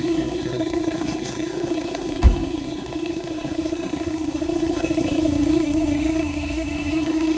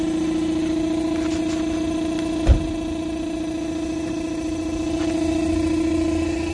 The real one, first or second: second